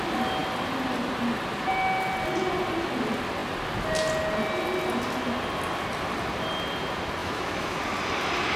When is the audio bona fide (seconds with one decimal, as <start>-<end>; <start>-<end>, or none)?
0.0-7.2; 7.8-8.6